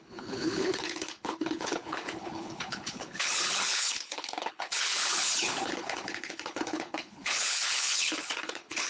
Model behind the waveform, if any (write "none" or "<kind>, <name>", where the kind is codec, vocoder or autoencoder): codec, HILCodec